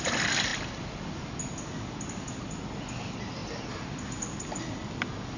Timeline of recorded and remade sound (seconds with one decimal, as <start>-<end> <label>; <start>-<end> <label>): 0.0-5.4 recorded